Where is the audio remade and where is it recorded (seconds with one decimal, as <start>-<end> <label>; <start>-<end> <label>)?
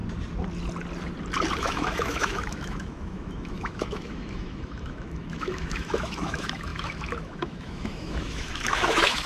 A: 0.0-1.6 recorded; 1.6-9.3 remade